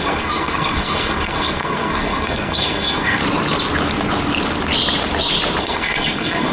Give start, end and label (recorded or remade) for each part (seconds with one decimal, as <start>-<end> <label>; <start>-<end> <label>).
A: 0.0-3.2 remade; 3.2-5.6 recorded; 5.6-6.5 remade